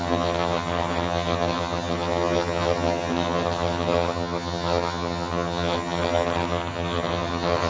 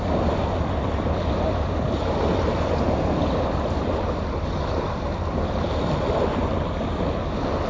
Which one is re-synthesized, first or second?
first